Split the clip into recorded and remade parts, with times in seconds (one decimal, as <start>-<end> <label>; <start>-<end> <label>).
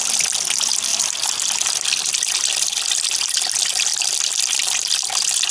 0.0-5.5 recorded